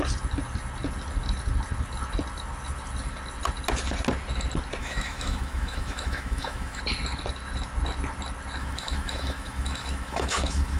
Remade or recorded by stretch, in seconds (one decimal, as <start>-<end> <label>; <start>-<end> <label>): 0.0-4.8 recorded; 4.8-6.8 remade; 6.8-8.6 recorded; 8.6-10.8 remade